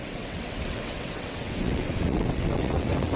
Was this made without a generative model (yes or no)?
no